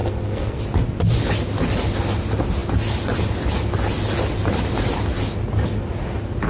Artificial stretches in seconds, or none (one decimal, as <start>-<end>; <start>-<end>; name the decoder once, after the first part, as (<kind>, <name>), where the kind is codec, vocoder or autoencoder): 0.0-0.6 (codec, SNAC)